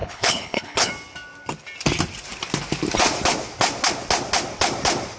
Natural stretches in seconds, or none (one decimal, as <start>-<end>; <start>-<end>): 0.9-5.2